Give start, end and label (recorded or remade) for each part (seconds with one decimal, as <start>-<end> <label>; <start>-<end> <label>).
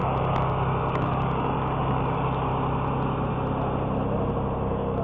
0.0-2.5 remade; 2.5-4.6 recorded; 4.6-5.0 remade